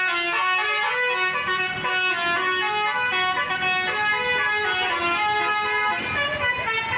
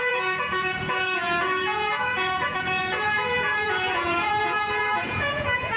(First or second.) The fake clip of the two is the second